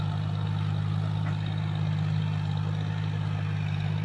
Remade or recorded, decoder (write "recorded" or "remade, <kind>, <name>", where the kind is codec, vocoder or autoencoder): recorded